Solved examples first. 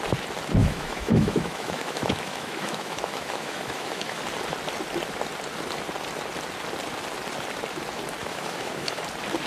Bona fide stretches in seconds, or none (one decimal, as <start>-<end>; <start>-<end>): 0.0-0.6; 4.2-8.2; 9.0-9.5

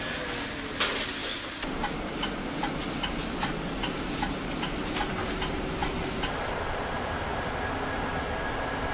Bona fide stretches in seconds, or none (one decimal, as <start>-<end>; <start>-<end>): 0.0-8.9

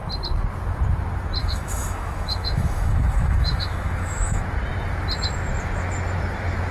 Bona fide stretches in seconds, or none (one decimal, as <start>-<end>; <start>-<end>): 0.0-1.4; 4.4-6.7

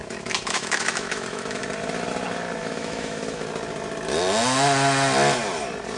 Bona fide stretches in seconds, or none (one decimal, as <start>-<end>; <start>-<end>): 1.6-2.6; 3.5-6.0